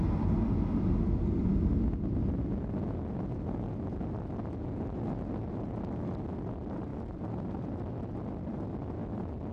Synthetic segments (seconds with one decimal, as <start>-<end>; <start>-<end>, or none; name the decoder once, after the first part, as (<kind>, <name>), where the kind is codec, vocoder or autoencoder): 6.9-8.2 (vocoder, BigVGAN v2)